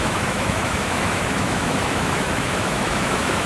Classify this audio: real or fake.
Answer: fake